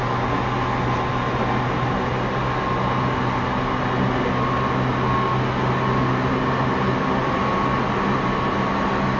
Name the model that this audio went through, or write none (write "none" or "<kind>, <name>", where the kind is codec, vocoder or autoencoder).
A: none